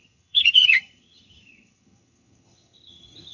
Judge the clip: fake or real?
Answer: fake